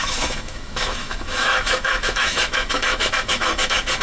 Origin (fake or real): fake